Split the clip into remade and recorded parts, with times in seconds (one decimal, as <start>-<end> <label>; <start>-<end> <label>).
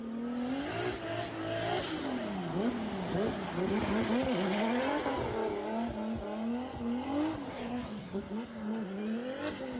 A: 0.0-7.5 recorded; 7.5-8.2 remade; 8.2-9.8 recorded